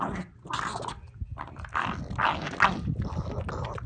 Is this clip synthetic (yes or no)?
no